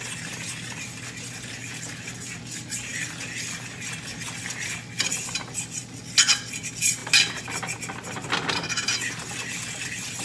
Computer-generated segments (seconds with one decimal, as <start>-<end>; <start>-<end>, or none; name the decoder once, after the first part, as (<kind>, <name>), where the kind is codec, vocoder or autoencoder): none